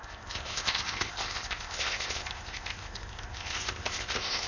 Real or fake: fake